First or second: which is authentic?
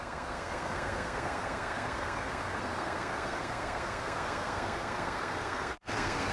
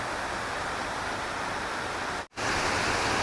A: second